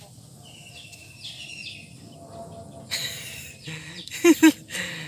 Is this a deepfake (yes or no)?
no